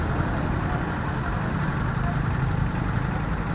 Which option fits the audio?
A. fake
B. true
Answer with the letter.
B